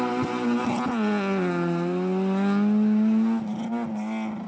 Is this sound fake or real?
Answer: real